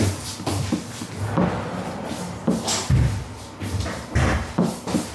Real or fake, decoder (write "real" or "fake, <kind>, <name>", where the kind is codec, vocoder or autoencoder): real